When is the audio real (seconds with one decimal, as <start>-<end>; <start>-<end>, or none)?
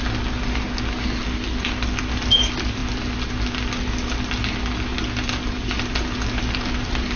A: 0.0-7.2